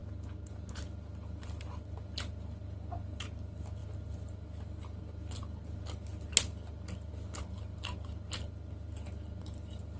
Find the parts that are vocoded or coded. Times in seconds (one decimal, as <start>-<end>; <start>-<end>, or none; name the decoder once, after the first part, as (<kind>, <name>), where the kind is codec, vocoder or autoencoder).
none